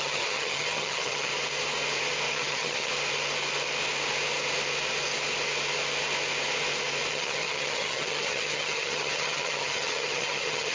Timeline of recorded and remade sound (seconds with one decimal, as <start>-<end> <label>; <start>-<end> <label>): 0.0-1.3 remade; 1.3-2.3 recorded; 2.3-2.9 remade; 2.9-7.1 recorded; 7.1-10.7 remade